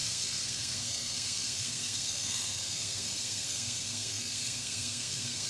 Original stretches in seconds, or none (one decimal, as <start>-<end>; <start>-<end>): none